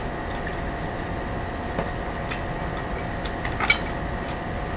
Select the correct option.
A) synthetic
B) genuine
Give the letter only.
B